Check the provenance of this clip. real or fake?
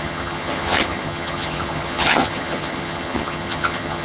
fake